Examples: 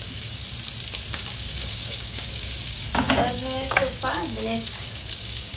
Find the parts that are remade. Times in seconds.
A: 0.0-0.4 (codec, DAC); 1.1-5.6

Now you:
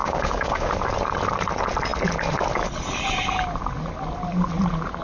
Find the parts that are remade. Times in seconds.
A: 0.0-0.7 (codec, DAC)

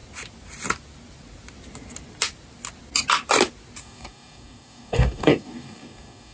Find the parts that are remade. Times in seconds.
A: 3.8-6.3 (codec, DAC)